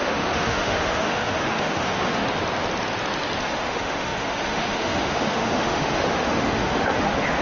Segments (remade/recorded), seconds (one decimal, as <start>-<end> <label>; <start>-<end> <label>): 0.0-2.2 remade; 2.2-3.4 recorded; 3.4-7.4 remade